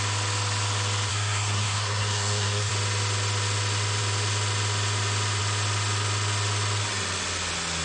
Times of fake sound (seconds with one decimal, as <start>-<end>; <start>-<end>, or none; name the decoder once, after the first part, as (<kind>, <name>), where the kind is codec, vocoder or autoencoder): 1.1-2.7 (codec, SNAC)